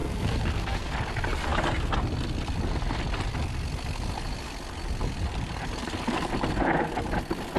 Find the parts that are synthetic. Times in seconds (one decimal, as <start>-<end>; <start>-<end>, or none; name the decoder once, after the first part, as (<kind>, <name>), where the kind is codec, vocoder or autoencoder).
0.0-0.9 (codec, SNAC)

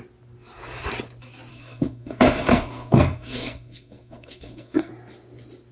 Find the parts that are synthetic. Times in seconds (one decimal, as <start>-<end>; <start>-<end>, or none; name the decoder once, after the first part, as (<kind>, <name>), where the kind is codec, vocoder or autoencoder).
1.5-4.9 (codec, SNAC)

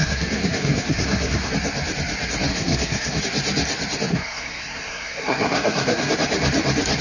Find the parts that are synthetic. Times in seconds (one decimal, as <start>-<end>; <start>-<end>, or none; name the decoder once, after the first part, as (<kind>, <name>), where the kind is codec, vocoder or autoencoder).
0.0-1.5 (codec, SNAC); 2.5-3.2; 4.1-6.1

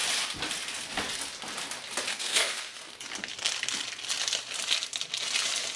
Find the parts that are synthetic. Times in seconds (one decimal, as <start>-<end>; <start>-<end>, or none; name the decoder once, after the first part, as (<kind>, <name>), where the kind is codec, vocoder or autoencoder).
2.1-2.9 (codec, SNAC)

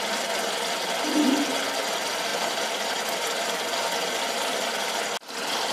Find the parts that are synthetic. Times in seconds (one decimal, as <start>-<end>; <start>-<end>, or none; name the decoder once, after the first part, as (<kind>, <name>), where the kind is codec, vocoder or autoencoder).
none